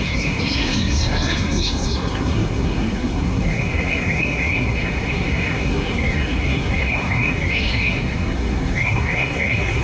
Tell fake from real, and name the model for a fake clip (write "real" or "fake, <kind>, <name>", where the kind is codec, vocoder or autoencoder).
fake, codec, SNAC